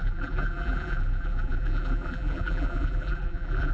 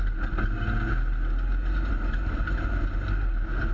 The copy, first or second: first